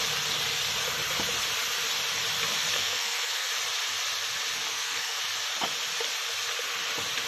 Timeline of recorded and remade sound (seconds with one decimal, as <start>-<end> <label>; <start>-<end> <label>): 0.0-2.7 recorded; 2.7-3.5 remade; 3.5-4.7 recorded; 4.7-5.2 remade; 5.2-7.3 recorded